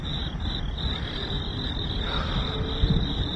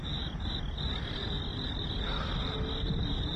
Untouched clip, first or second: second